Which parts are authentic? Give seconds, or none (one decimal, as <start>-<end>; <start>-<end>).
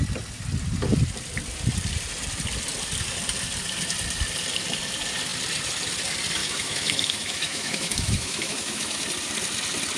0.0-6.4; 9.0-10.0